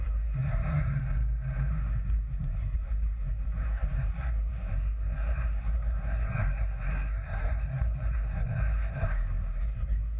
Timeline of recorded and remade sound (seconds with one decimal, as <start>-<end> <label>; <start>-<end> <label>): 0.0-1.0 remade; 1.0-1.7 recorded; 1.7-10.2 remade

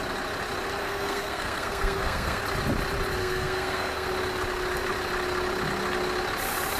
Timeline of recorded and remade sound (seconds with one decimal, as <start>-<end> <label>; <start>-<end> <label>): 0.0-0.8 recorded; 0.8-2.4 remade; 2.4-3.2 recorded; 3.2-4.1 remade; 4.1-6.8 recorded

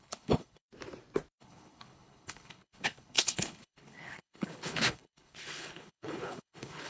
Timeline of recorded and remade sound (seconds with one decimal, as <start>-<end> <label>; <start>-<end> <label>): 0.0-0.6 remade; 0.6-1.4 recorded; 1.4-6.9 remade

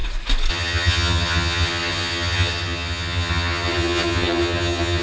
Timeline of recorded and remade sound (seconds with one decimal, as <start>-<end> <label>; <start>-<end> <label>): 0.0-0.5 recorded; 0.5-5.0 remade

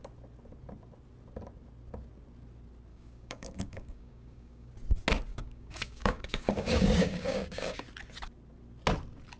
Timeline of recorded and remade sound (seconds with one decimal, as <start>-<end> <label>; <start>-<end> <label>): 0.0-2.9 recorded; 2.9-4.7 remade; 4.7-5.3 recorded; 5.3-7.8 remade; 7.8-9.4 recorded

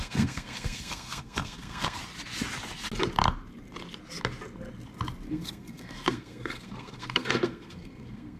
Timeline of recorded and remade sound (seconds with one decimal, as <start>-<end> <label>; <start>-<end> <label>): 0.0-2.0 remade; 2.0-5.3 recorded; 5.3-8.4 remade